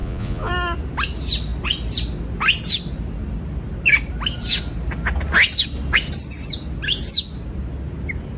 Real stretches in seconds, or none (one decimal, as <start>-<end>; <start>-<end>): 0.5-8.4